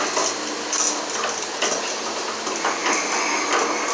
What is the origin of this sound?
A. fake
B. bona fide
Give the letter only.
B